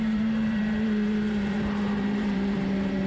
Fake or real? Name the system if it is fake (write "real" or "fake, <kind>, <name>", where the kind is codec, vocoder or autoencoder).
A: fake, vocoder, BigVGAN v2